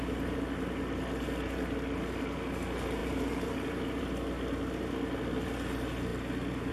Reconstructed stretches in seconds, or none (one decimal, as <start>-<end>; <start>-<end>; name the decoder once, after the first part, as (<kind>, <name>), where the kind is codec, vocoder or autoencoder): none